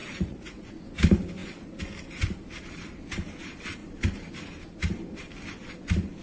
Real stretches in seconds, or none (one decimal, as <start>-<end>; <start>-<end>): 0.8-6.2